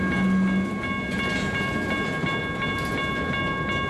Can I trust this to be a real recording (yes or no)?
yes